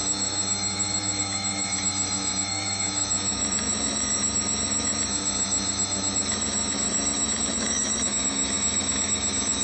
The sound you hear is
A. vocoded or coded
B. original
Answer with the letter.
A